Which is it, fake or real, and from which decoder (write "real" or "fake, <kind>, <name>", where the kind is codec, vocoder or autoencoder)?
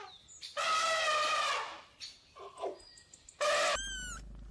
real